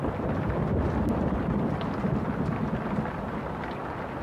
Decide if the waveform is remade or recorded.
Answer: recorded